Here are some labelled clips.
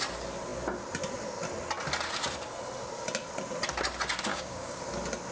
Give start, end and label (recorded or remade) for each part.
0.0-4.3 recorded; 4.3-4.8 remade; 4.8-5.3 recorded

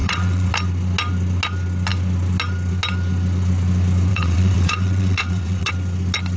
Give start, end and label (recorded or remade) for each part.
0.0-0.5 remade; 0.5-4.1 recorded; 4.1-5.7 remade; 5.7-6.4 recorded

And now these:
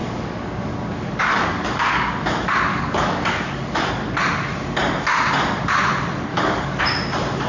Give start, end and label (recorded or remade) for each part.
0.0-2.3 remade; 2.3-2.7 recorded; 2.7-3.9 remade; 3.9-6.3 recorded; 6.3-6.8 remade; 6.8-7.5 recorded

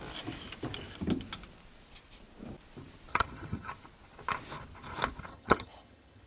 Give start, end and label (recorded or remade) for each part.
0.0-3.1 recorded; 3.1-3.7 remade; 3.7-5.3 recorded; 5.3-6.3 remade

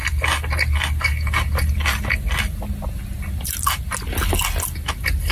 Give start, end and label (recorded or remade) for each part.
0.0-5.3 recorded